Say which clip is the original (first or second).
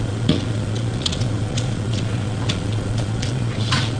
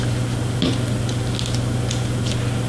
second